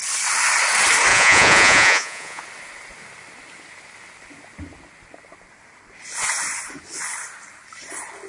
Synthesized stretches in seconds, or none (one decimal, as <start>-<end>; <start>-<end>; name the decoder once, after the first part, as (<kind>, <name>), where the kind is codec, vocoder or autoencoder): 1.1-2.4 (vocoder, Vocos)